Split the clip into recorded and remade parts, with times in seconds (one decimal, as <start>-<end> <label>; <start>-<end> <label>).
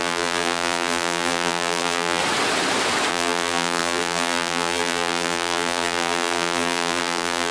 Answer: 0.0-2.2 remade; 2.2-3.1 recorded; 3.1-7.5 remade